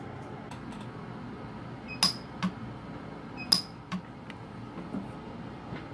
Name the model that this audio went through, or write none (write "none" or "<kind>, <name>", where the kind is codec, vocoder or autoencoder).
none